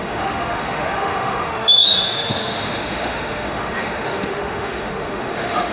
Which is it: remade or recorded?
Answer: remade